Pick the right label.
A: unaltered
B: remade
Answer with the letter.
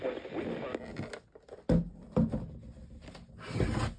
A